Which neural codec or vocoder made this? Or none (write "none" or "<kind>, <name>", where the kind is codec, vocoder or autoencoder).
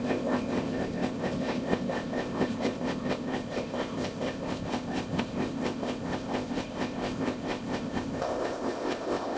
codec, ZipCodec